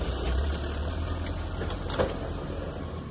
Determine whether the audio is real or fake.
fake